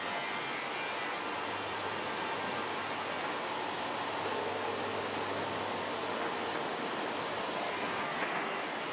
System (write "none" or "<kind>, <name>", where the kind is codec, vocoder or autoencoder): none